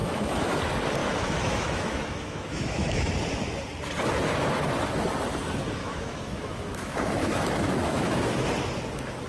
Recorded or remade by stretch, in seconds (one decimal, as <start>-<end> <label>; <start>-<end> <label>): 0.0-0.6 remade; 0.6-1.0 recorded; 1.0-3.1 remade; 3.1-5.8 recorded; 5.8-8.3 remade; 8.3-9.3 recorded